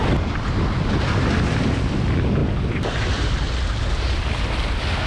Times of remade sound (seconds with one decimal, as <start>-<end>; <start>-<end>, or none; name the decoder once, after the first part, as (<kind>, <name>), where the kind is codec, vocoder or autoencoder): none

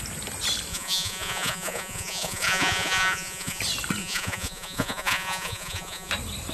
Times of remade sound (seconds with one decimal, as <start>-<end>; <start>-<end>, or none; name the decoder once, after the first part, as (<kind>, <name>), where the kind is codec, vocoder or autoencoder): 0.7-3.6 (vocoder, Vocos); 4.0-6.1

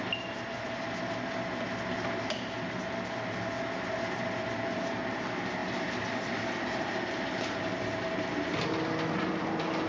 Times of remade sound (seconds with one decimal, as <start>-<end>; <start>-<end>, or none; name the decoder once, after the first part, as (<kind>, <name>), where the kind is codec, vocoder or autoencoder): none